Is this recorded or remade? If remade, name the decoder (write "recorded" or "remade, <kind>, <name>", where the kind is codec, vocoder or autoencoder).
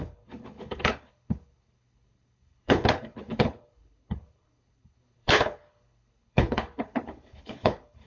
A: remade, codec, HILCodec